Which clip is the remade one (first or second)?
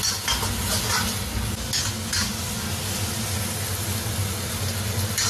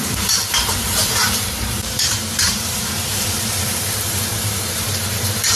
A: second